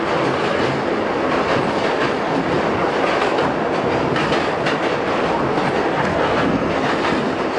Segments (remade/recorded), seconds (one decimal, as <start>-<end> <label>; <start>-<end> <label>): 0.0-6.1 recorded; 6.1-6.8 remade; 6.8-7.6 recorded